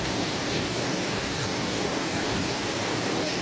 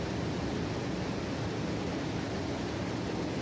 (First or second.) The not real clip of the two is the first